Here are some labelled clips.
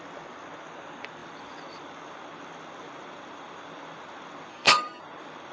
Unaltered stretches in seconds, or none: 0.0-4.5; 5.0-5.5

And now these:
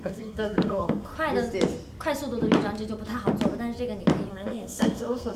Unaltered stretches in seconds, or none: 1.1-4.3

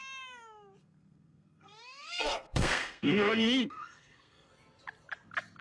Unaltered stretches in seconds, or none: 0.0-0.8; 4.5-5.6

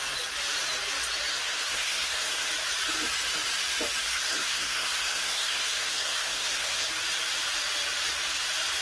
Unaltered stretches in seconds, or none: 0.0-1.3; 2.5-4.0; 6.9-8.8